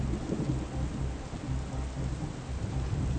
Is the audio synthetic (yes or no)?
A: no